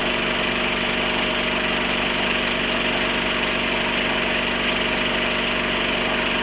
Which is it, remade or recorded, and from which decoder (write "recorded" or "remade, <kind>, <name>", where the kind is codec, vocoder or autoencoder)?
recorded